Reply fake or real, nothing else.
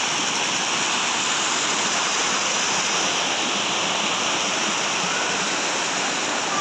real